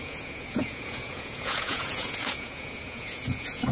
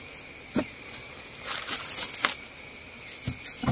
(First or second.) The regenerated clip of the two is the first